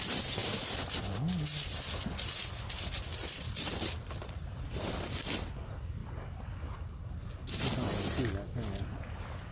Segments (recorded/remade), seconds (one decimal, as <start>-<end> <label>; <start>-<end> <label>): 0.0-0.4 remade; 0.4-1.9 recorded; 1.9-6.0 remade; 6.0-9.5 recorded